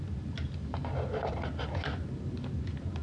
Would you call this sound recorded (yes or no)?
yes